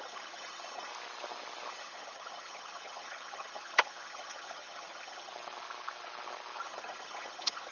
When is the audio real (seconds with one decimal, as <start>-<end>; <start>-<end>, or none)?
0.9-1.7; 5.3-6.6